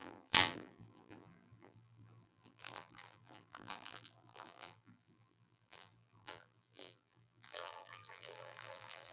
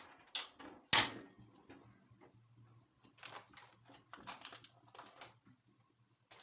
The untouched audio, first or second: second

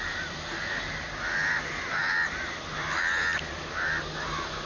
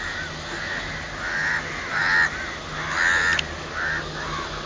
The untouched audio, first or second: second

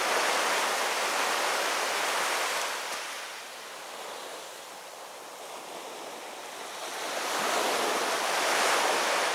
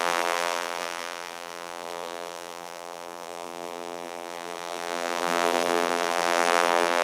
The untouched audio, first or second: first